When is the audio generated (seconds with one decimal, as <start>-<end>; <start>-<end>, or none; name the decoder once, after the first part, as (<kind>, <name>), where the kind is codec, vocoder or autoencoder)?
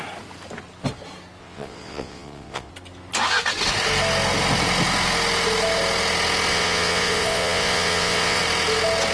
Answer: 1.4-2.7 (vocoder, WaveNeXt); 6.5-8.4